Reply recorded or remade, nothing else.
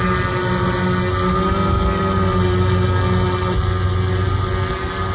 recorded